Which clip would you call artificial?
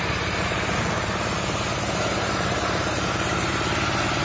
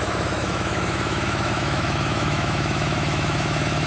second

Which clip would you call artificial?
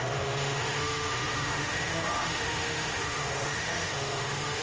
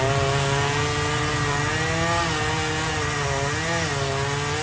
first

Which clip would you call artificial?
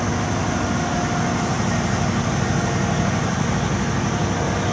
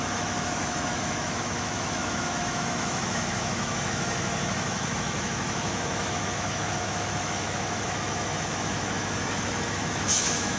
second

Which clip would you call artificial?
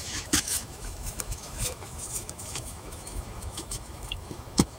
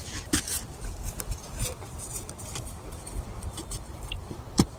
first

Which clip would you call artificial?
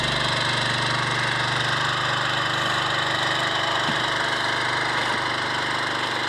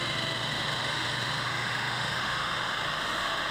second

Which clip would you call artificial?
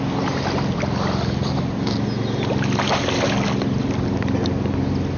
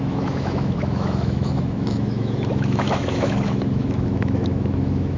second